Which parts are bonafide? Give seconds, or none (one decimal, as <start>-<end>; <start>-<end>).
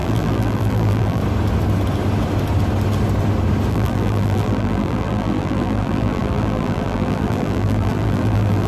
1.2-3.7